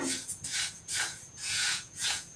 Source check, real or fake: fake